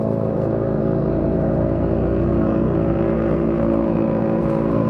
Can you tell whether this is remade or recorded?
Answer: remade